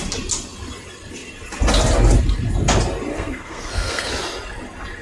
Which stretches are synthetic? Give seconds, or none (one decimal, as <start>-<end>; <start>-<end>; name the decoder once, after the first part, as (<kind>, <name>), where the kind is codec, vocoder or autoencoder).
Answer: 3.1-4.1 (codec, SNAC)